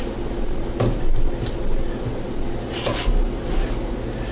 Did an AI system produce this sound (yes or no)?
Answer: no